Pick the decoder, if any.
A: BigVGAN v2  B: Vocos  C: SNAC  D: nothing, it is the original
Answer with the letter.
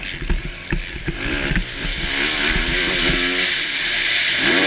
D